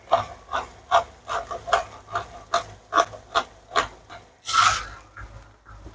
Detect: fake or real real